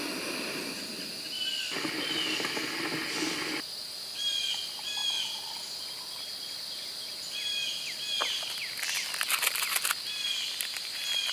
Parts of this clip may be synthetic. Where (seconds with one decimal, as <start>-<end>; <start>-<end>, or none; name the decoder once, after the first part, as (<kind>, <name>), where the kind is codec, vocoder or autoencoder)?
none